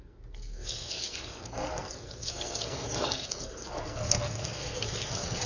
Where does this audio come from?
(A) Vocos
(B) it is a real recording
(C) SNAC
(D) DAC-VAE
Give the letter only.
C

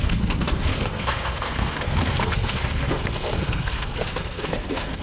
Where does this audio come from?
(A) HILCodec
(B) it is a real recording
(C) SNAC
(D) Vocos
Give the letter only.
C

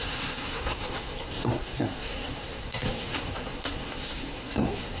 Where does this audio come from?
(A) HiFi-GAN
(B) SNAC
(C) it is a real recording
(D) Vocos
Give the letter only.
B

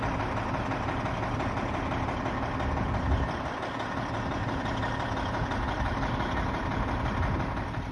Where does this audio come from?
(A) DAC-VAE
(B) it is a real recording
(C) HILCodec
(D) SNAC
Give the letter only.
B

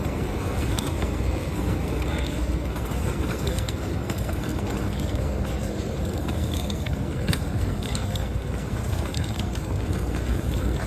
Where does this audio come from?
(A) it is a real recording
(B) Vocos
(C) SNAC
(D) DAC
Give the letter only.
C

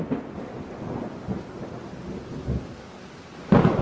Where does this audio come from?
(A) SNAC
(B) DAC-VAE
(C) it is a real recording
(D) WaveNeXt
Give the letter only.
C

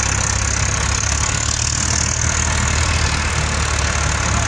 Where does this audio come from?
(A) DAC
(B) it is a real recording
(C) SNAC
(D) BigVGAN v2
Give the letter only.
B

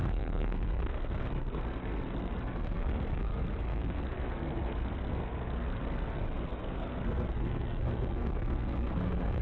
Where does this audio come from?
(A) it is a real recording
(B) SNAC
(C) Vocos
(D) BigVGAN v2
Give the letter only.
B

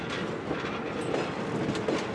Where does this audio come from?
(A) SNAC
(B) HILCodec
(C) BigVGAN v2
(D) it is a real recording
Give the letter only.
D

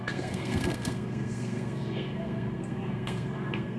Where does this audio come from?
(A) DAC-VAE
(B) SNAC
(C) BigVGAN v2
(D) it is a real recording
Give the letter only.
B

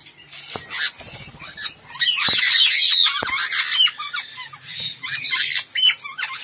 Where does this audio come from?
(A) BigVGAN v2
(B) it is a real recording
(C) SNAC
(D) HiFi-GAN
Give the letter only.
B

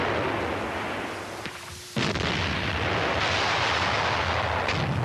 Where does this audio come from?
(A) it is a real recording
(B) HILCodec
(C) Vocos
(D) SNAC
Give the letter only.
A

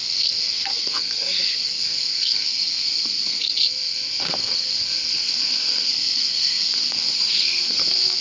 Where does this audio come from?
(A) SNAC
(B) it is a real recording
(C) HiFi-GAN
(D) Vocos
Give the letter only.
A